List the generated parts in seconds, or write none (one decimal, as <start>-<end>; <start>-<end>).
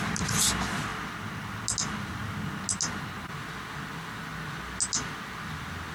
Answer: none